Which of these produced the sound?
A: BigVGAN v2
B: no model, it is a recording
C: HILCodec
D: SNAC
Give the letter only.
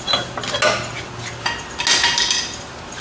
B